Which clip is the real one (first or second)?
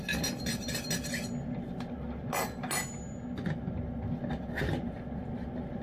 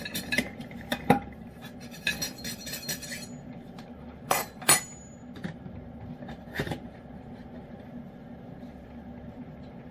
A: first